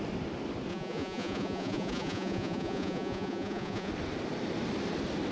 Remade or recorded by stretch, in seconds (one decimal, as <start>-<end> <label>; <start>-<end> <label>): 0.0-0.7 recorded; 0.7-3.9 remade; 3.9-5.3 recorded